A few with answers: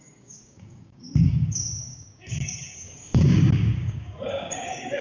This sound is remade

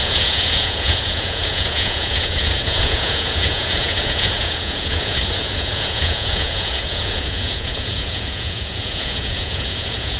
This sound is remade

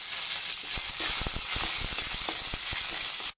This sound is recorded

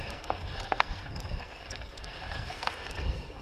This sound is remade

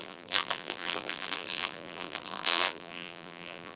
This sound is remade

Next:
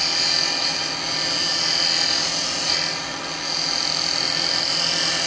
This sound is recorded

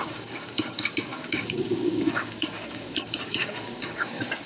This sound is remade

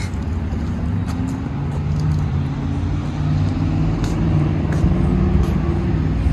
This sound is recorded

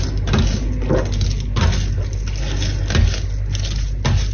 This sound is recorded